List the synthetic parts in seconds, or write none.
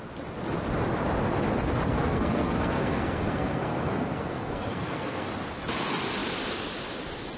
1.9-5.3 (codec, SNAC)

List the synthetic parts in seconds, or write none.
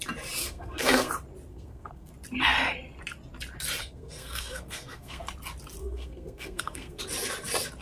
0.4-1.1 (codec, SNAC); 1.5-2.1; 3.8-5.2; 5.8-7.0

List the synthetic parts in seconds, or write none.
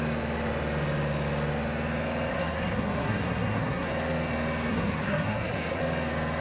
2.3-3.9 (codec, SNAC); 4.7-5.8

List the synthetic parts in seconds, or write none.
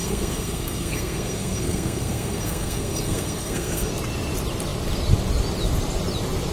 0.0-3.9 (codec, SNAC)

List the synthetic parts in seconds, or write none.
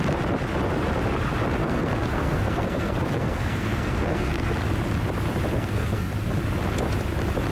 1.6-4.5 (codec, SNAC); 5.5-6.1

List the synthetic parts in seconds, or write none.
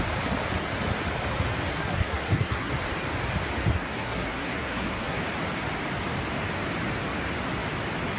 1.7-2.7 (codec, SNAC); 3.7-5.2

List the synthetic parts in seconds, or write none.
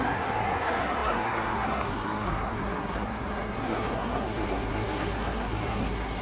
0.0-6.2 (codec, SNAC)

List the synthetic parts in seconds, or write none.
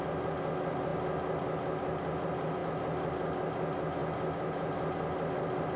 none